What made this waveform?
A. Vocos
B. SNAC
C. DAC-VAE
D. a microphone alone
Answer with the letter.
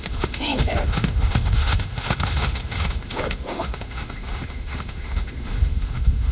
C